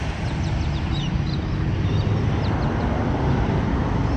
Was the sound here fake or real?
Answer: real